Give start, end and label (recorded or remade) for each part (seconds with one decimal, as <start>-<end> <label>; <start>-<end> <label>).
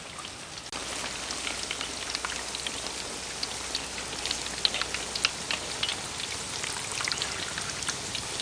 0.0-8.4 recorded